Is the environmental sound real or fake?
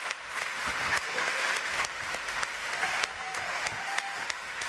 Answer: fake